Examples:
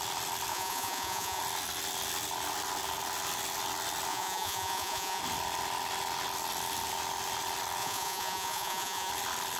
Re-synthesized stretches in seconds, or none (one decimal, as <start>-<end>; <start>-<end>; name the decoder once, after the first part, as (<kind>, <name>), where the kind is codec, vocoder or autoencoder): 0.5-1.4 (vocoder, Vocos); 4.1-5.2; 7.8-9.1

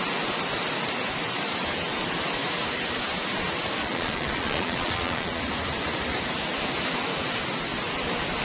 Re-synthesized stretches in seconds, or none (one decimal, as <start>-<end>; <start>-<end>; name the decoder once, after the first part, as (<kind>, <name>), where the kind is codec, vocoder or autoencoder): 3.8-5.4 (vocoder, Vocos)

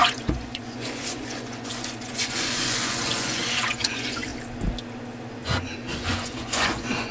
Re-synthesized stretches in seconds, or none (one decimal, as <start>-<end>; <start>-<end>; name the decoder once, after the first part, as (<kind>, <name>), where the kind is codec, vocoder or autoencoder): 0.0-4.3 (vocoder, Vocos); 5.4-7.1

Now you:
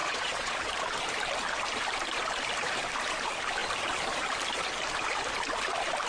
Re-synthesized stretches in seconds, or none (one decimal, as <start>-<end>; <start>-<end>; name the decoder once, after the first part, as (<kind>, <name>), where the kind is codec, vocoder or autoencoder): 0.0-0.7 (vocoder, Vocos)

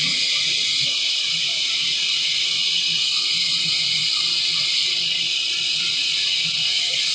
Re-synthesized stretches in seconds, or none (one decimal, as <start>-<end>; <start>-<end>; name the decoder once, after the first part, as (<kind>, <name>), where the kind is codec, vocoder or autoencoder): 0.0-4.0 (vocoder, Vocos); 5.7-7.1

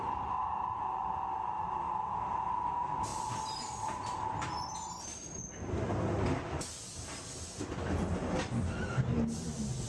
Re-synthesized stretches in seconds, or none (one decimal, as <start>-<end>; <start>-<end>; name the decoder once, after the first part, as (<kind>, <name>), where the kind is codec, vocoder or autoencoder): none